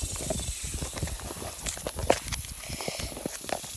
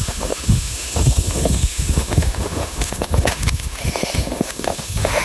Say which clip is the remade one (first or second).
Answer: second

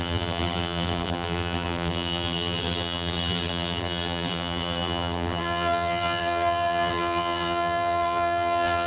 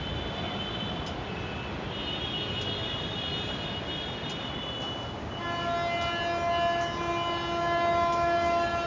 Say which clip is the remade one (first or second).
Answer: first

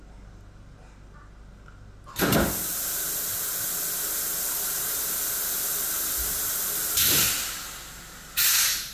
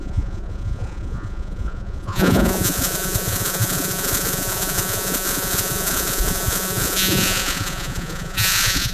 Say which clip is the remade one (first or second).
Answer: second